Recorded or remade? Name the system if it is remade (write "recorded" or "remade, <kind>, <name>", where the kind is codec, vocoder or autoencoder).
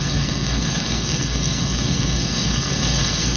remade, codec, SNAC